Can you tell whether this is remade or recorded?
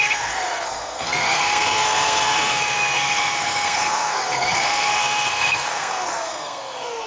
remade